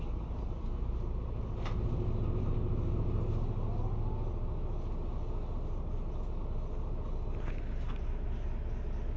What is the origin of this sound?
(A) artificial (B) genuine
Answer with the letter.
B